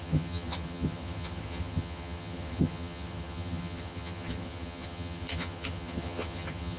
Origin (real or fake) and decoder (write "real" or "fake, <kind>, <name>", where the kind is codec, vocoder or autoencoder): fake, vocoder, HiFi-GAN